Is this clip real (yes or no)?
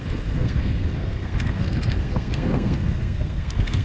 no